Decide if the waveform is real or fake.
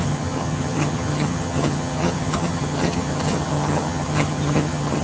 fake